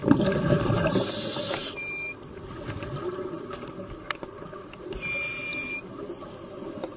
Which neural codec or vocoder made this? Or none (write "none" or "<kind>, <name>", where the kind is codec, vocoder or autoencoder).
none